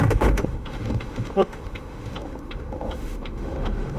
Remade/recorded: remade